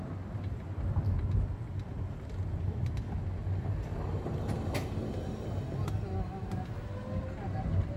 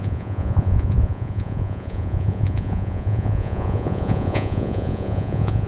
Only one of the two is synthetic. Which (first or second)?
second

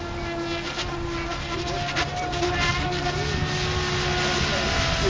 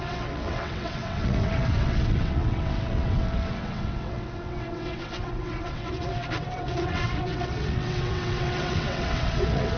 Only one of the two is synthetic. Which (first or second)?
second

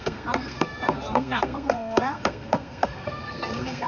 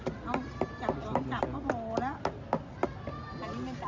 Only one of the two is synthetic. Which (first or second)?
first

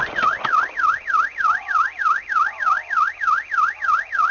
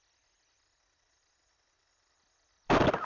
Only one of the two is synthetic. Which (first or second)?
second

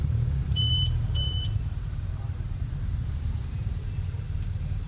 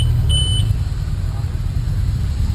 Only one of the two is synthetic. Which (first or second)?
first